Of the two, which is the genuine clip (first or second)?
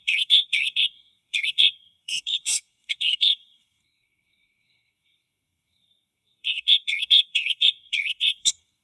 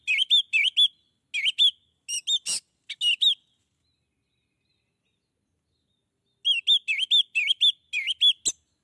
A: second